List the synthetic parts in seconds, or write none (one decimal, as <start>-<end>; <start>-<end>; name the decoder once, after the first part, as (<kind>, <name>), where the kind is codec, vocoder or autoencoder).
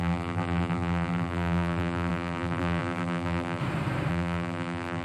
0.0-3.6 (vocoder, BigVGAN v2); 4.1-5.0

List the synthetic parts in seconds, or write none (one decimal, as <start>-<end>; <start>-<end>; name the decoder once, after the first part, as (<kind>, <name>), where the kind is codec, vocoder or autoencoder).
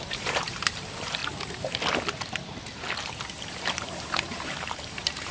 0.0-1.2 (vocoder, BigVGAN v2); 3.5-5.3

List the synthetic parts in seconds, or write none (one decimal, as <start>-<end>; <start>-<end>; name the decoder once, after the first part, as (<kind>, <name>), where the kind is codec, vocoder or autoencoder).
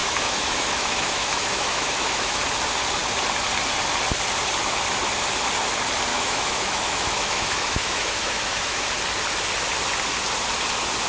0.0-2.4 (autoencoder, DAC-VAE); 6.1-8.9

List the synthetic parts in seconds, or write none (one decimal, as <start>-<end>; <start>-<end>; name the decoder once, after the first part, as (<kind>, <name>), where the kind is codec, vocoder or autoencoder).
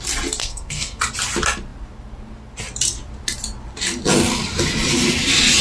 0.4-1.0 (codec, SNAC)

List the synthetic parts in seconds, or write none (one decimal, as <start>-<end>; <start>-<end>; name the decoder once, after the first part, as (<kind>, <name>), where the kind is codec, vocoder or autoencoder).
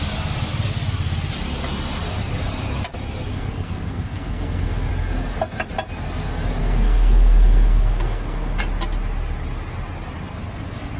3.3-4.9 (codec, SNAC); 6.6-8.6